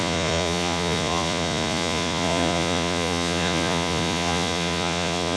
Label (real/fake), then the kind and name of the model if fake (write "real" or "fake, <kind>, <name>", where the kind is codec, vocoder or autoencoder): fake, vocoder, Vocos